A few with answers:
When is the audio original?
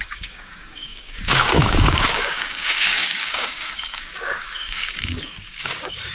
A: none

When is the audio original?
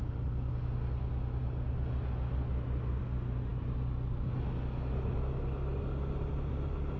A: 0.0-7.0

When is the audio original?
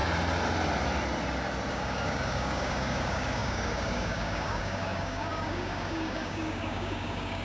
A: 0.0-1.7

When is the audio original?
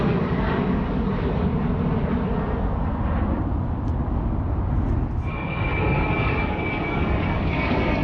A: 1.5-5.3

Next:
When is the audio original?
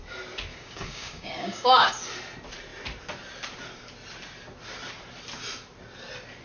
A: 0.0-0.5; 1.9-6.4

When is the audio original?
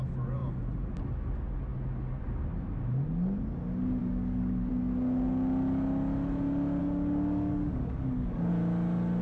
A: 0.0-4.0; 4.7-6.8; 8.5-9.2